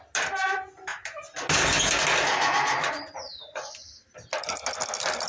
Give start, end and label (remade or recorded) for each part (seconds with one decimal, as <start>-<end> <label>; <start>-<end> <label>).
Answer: 0.0-5.3 recorded